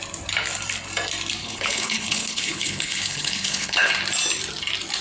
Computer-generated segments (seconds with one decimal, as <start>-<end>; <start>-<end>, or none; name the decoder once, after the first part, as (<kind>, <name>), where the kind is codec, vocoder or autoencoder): 1.4-3.9 (codec, HILCodec)